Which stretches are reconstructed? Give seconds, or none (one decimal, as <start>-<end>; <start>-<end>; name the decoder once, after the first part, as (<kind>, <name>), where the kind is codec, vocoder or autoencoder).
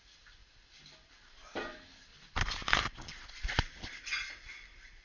none